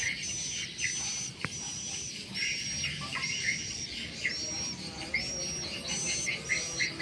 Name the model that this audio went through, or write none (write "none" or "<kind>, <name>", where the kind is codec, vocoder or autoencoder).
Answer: none